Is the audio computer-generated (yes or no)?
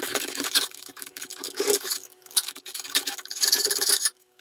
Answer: yes